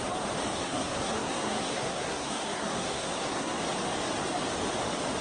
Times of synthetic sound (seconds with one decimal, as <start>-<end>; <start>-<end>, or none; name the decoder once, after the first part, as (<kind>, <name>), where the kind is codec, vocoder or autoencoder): 0.5-3.6 (codec, SNAC)